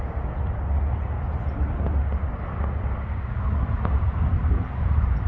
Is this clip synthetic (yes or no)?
no